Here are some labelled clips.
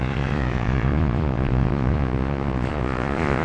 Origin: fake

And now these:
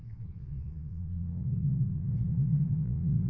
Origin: fake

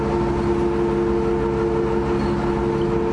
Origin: real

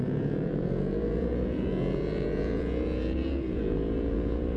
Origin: fake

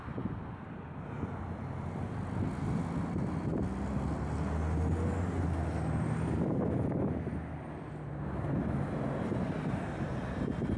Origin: real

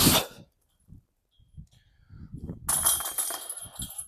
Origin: real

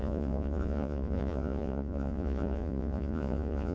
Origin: fake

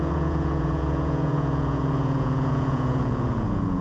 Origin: fake